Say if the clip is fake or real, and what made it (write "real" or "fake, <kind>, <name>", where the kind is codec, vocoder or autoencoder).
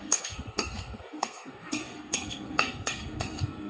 fake, codec, SNAC